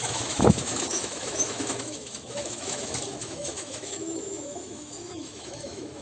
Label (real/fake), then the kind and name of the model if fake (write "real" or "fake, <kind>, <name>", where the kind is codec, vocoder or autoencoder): fake, autoencoder, DAC-VAE